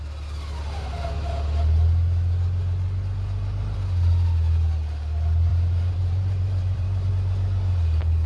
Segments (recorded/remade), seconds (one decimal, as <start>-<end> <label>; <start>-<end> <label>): 0.0-0.6 recorded; 0.6-1.3 remade; 1.3-5.5 recorded; 5.5-7.1 remade; 7.1-8.3 recorded